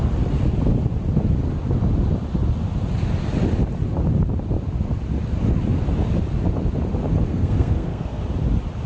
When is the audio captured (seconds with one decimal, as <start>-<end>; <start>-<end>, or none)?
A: 0.0-7.3; 8.2-8.9